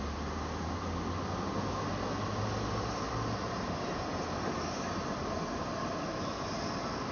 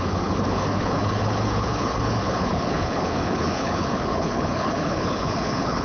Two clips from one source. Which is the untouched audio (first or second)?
first